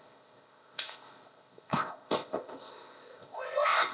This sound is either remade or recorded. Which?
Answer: remade